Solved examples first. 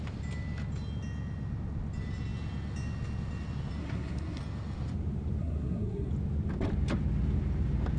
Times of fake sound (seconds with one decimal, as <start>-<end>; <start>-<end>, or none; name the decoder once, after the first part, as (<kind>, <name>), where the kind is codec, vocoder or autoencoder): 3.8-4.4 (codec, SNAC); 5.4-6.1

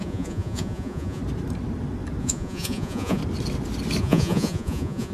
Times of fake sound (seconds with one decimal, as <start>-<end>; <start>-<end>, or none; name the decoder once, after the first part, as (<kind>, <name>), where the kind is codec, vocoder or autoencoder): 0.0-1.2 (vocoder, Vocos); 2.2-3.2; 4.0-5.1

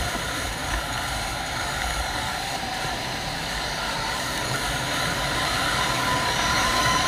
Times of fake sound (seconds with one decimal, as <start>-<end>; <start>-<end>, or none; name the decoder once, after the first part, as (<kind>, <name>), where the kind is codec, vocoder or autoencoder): 0.6-2.6 (codec, DAC); 3.3-7.1